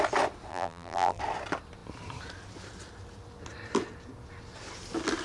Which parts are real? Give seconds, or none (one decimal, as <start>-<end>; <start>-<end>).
0.0-0.5; 1.2-5.2